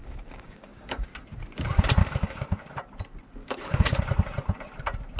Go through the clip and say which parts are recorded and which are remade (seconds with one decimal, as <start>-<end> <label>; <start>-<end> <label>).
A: 0.0-1.1 remade; 1.1-2.0 recorded; 2.0-2.6 remade; 2.6-3.4 recorded; 3.4-4.0 remade; 4.0-5.2 recorded